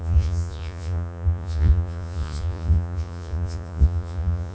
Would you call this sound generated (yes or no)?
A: yes